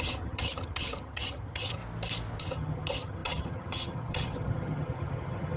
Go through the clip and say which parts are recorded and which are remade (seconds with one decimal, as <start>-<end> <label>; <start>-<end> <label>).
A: 0.0-1.8 remade; 1.8-2.4 recorded; 2.4-5.6 remade